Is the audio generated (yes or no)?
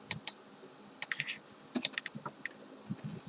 no